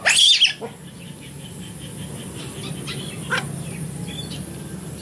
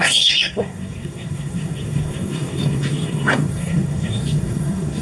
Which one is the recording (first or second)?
first